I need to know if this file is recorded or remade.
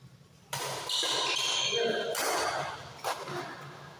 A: recorded